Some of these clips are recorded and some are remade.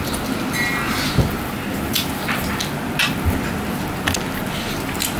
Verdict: recorded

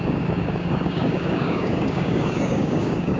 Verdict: remade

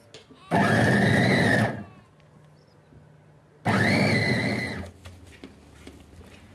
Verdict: recorded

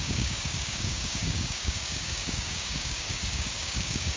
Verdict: remade